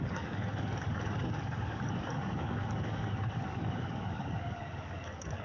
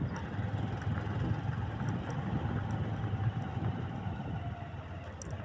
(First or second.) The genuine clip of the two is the second